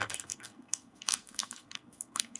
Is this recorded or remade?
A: remade